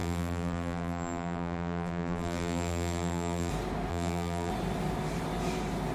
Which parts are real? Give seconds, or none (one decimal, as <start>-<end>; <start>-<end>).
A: 3.5-3.9; 4.5-5.9